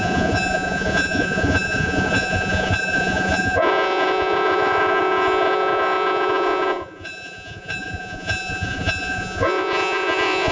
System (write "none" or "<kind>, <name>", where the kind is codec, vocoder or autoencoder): vocoder, Vocos